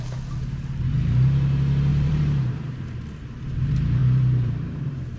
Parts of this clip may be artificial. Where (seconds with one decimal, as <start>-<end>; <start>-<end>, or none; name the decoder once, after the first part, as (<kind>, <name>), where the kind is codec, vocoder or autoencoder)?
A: 1.9-3.0 (vocoder, BigVGAN v2); 4.0-5.2